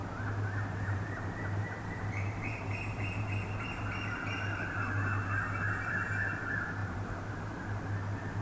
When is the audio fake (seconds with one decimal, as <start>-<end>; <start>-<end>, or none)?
0.0-3.3; 6.8-7.3